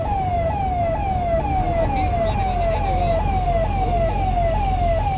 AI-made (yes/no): no